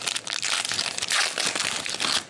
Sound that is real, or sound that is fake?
real